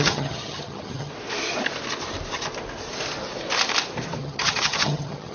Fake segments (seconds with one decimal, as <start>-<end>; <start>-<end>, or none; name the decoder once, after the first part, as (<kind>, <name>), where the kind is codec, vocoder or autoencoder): 0.0-1.1 (vocoder, HiFi-GAN); 4.2-5.3